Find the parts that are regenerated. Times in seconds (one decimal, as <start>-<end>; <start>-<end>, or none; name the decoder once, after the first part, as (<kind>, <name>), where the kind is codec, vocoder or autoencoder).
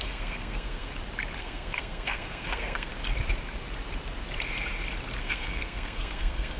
0.0-0.9 (codec, SNAC); 1.4-2.9; 5.2-6.6